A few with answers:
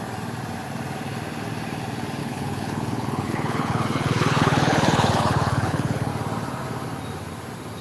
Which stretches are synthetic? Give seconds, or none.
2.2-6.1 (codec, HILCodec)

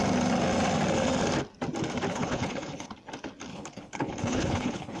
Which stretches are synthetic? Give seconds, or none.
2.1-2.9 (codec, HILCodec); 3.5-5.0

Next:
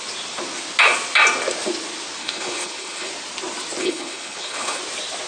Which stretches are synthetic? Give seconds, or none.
2.2-3.1 (codec, HILCodec); 3.8-4.8